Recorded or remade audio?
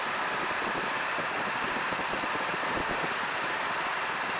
recorded